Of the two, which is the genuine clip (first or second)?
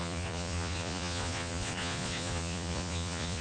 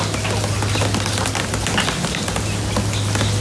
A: second